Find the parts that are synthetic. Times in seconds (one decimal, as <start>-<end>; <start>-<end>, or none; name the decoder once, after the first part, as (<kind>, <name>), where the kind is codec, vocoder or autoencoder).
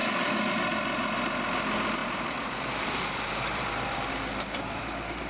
2.0-4.8 (vocoder, BigVGAN v2)